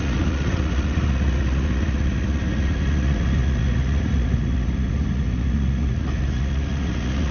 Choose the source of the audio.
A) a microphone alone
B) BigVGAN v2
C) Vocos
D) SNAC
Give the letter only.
C